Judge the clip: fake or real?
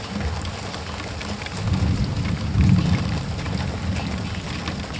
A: real